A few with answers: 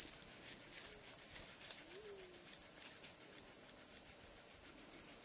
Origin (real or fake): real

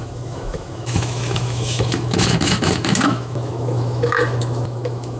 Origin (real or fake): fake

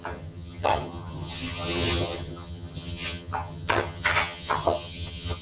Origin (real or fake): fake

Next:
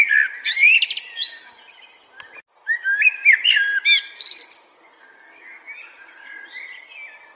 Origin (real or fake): real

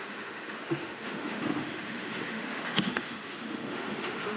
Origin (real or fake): fake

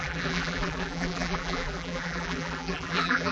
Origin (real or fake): fake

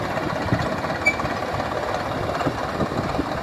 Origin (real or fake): real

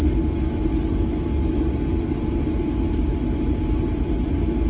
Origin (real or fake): real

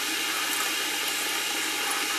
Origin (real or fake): real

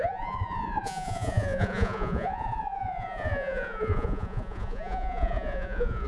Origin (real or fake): fake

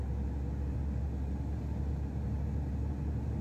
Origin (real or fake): real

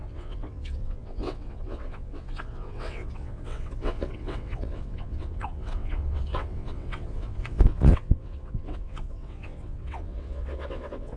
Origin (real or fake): fake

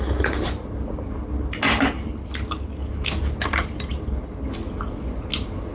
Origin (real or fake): real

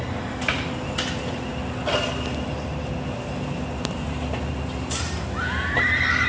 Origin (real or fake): real